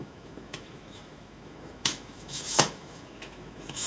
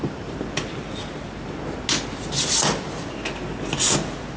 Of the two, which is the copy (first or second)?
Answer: first